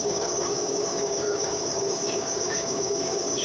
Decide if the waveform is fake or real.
fake